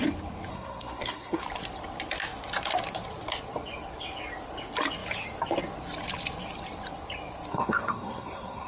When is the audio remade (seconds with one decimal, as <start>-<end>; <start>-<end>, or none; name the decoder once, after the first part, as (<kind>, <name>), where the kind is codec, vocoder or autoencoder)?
0.5-1.4 (codec, SNAC); 7.5-8.7